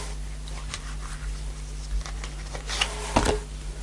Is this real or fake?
real